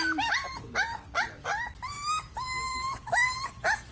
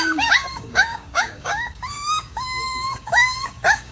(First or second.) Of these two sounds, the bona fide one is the first